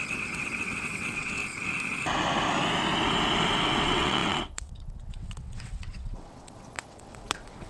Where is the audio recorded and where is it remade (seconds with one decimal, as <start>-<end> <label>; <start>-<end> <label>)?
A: 0.0-1.4 remade; 1.4-3.8 recorded; 3.8-7.7 remade